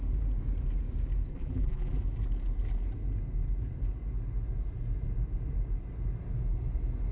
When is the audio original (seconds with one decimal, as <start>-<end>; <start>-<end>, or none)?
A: 0.0-1.3; 2.0-7.1